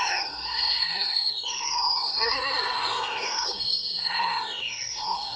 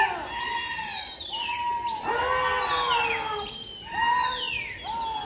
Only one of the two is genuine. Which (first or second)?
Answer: second